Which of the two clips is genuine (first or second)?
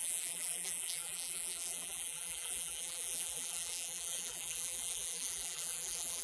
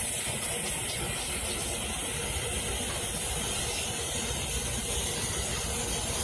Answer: second